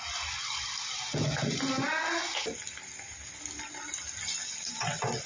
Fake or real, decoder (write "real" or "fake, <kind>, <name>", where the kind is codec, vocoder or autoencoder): real